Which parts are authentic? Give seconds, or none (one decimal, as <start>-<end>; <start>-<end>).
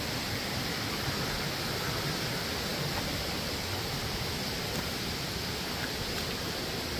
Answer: 0.0-7.0